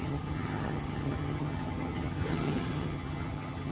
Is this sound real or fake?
fake